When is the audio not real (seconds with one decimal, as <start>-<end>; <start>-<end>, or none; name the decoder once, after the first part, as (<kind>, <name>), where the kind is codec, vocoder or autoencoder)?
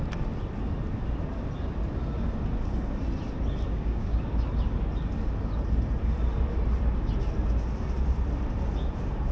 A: 3.7-4.2 (codec, DAC)